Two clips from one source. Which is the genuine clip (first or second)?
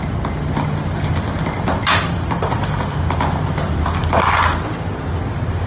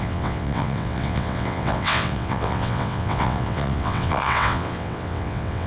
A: first